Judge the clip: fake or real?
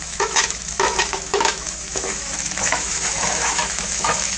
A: fake